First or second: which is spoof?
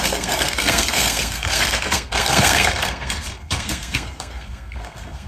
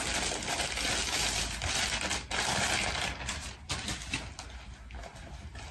first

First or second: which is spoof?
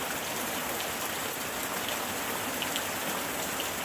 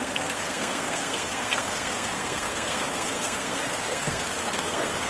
second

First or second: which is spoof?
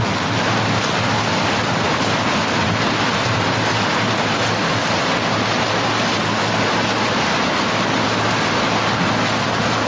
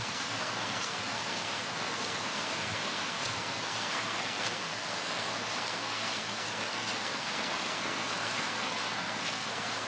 second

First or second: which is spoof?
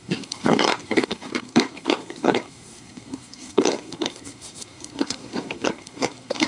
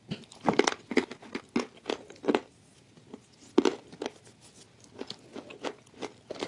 first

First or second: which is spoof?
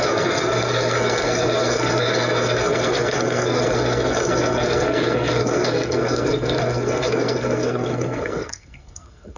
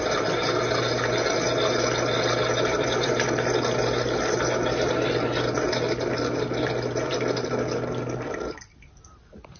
first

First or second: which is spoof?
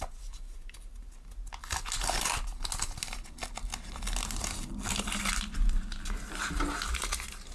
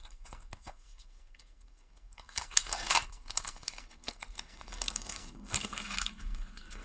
second